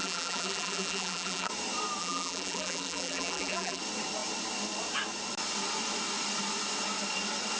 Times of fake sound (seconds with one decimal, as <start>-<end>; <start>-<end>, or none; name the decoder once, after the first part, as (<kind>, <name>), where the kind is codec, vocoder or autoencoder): 0.0-1.5 (vocoder, BigVGAN v2); 2.0-3.8

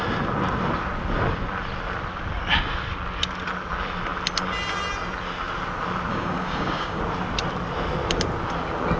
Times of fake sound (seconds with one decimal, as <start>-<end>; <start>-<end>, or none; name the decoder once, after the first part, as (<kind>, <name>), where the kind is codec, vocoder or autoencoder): 6.1-7.0 (codec, DAC)